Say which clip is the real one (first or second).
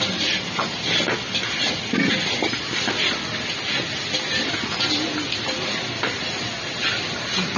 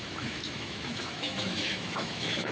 first